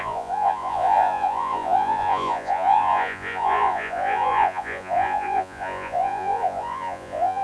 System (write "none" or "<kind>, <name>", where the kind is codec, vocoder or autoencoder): vocoder, Vocos